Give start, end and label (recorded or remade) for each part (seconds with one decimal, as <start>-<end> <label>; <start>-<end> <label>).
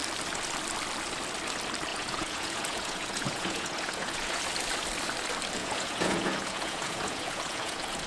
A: 0.0-1.9 recorded; 1.9-4.4 remade; 4.4-5.6 recorded; 5.6-8.1 remade